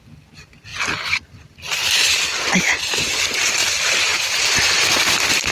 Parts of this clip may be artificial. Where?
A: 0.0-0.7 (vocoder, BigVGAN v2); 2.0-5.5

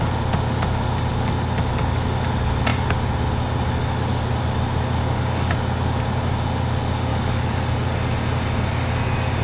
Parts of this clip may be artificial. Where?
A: 5.0-5.5 (codec, DAC); 7.1-7.6

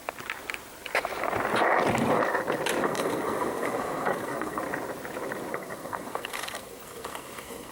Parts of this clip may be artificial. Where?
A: 2.8-4.6 (codec, SNAC); 5.5-7.7

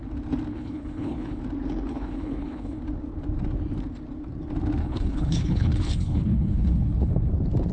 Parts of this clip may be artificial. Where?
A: 0.5-1.4 (codec, HILCodec); 1.9-2.8; 4.8-7.3